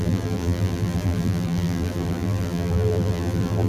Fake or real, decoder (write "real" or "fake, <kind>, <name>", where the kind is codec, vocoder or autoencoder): fake, vocoder, BigVGAN v2